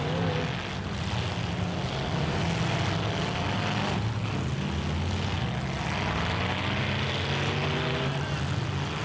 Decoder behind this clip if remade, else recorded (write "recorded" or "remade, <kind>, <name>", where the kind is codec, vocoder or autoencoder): recorded